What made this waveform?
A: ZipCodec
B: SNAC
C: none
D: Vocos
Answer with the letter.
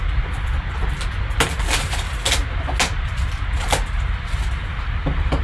C